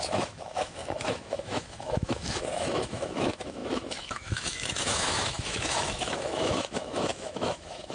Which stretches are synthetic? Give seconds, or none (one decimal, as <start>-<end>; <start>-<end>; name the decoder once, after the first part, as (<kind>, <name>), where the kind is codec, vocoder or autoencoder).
0.0-7.9 (autoencoder, DAC-VAE)